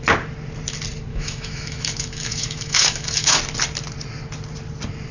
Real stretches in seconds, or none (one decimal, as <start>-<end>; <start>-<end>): 0.0-1.1; 3.4-5.1